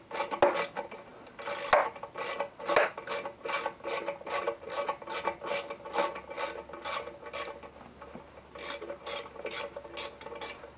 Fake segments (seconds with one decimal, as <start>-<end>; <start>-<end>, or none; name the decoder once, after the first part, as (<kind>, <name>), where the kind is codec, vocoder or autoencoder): none